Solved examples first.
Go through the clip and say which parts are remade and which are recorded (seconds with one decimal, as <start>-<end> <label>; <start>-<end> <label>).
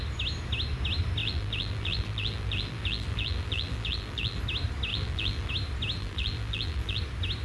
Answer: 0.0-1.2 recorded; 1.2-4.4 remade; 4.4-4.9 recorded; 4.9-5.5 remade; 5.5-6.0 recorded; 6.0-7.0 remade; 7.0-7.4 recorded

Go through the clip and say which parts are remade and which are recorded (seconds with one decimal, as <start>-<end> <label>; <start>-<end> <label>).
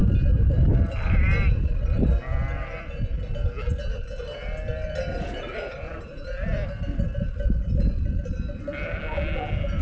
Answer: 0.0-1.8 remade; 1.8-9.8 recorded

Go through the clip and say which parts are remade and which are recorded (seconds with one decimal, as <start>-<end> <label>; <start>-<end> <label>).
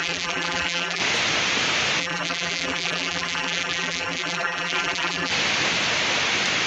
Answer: 0.0-1.0 remade; 1.0-2.0 recorded; 2.0-5.3 remade; 5.3-6.7 recorded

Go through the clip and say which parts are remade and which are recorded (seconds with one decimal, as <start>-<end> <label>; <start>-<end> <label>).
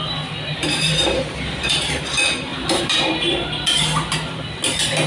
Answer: 0.0-0.5 recorded; 0.5-2.1 remade; 2.1-2.5 recorded; 2.5-3.1 remade; 3.1-5.1 recorded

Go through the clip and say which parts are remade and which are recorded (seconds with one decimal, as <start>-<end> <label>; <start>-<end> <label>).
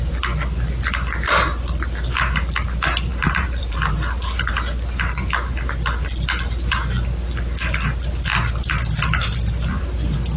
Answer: 0.0-3.1 recorded; 3.1-4.5 remade; 4.5-8.3 recorded; 8.3-10.4 remade